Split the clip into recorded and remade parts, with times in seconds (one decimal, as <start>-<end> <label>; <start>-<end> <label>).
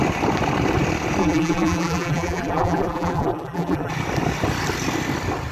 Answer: 0.0-1.2 recorded; 1.2-3.9 remade; 3.9-5.5 recorded